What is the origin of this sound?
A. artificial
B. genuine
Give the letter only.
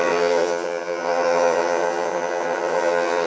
A